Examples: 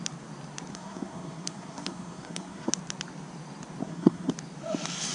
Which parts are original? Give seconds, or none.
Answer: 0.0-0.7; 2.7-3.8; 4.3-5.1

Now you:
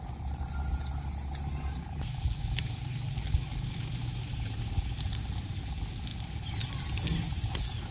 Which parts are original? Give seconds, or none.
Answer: 0.0-1.7; 3.1-3.5; 4.6-7.9

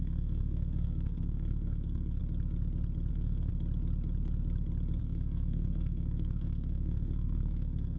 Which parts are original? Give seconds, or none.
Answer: 2.2-3.1; 3.5-5.0